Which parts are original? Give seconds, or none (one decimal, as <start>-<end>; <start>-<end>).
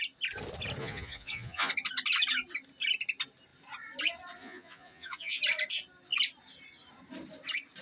0.0-0.8; 1.7-4.4; 5.4-7.8